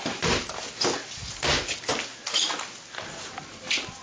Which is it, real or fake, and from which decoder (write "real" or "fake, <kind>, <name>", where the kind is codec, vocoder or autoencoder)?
real